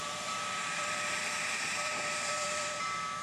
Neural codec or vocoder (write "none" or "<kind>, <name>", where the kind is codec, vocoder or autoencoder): vocoder, BigVGAN v2